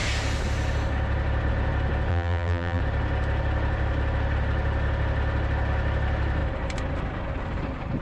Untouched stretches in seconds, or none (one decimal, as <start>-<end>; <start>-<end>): 0.0-2.1; 2.8-8.0